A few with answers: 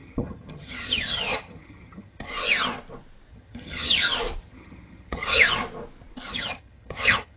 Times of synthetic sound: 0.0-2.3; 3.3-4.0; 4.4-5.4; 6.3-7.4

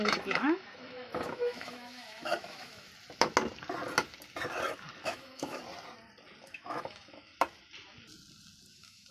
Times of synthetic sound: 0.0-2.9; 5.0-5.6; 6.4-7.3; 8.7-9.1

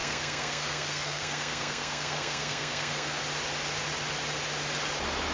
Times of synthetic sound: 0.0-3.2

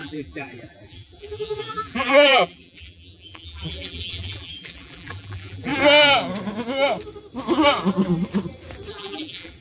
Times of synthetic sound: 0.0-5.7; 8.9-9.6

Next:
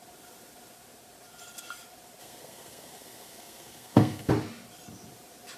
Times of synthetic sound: 2.2-4.3

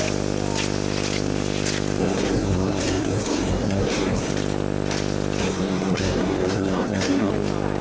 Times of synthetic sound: 2.0-4.3; 5.4-7.3

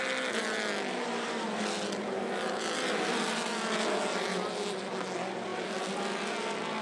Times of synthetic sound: none

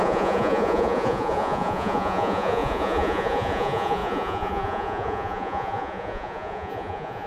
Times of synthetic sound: 0.0-7.3